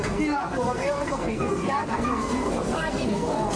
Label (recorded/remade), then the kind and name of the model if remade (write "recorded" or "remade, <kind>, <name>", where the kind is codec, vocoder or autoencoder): remade, codec, SNAC